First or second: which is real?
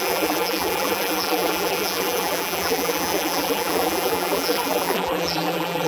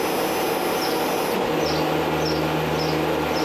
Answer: second